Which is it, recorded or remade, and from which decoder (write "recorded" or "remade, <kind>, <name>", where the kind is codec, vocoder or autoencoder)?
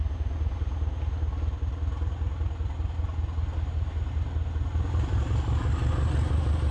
recorded